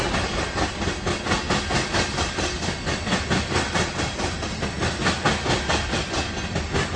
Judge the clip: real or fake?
real